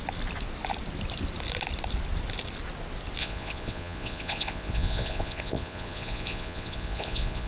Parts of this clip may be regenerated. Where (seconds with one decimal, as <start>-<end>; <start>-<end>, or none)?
3.2-7.5